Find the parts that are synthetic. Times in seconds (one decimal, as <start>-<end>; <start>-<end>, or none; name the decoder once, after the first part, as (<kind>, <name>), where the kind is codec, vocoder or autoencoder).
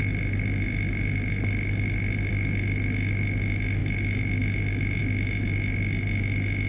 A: none